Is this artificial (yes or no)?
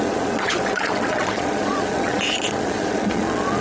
yes